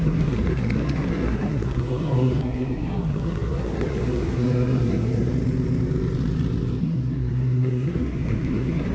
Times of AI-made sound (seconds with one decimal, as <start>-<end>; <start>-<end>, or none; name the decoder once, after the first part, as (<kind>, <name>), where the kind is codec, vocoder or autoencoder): 0.0-5.3 (codec, SNAC); 6.8-8.9